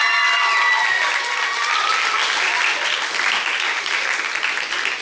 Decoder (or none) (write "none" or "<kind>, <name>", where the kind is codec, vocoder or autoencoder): none